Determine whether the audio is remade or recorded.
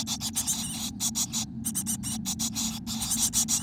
recorded